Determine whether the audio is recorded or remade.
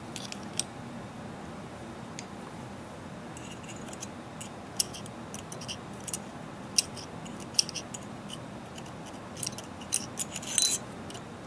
recorded